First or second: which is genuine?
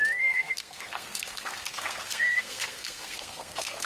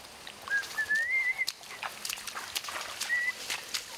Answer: second